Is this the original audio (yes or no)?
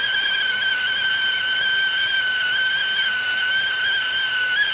yes